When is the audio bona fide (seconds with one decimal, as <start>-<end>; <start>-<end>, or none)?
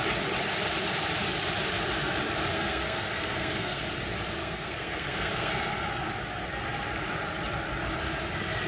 0.0-2.5; 3.8-4.4; 6.1-8.7